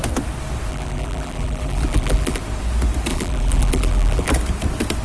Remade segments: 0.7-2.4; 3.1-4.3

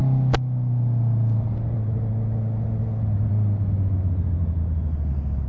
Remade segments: none

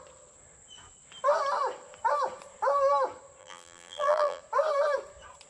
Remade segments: 3.4-4.4

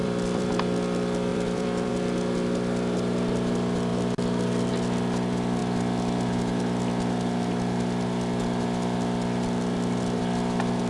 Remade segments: 0.0-0.5; 1.3-1.9

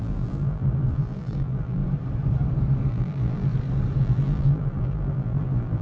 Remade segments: 0.0-1.8; 2.9-3.5; 4.0-5.8

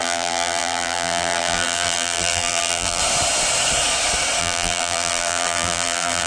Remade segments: 0.0-3.0; 4.4-6.3